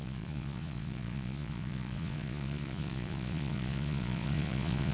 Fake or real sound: fake